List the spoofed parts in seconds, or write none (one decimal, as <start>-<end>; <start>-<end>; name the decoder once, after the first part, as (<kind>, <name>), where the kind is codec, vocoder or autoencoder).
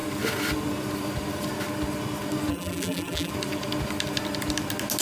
2.5-3.3 (vocoder, BigVGAN v2)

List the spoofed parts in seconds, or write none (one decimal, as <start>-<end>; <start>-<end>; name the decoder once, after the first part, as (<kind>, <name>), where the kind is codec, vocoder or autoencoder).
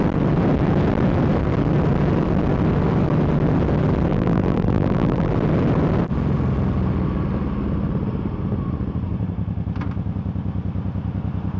4.1-5.3 (vocoder, BigVGAN v2)